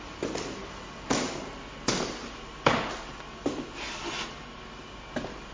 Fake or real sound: real